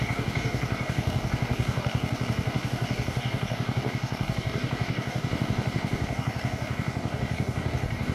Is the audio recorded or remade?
remade